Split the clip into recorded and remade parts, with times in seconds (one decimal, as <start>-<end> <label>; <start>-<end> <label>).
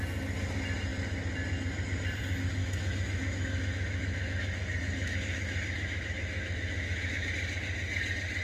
0.0-2.6 recorded; 2.6-7.3 remade; 7.3-8.4 recorded